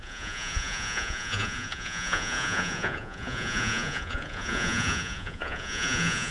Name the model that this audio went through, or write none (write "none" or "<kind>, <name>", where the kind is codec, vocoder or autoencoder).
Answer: vocoder, Vocos